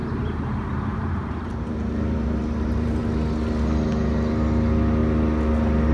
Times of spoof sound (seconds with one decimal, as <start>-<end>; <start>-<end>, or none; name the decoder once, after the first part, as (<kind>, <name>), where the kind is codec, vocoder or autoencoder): 0.0-3.0 (vocoder, BigVGAN v2)